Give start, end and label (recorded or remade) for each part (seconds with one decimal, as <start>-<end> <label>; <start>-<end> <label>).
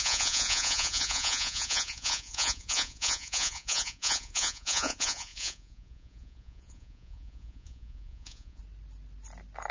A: 0.0-8.6 remade; 8.6-9.7 recorded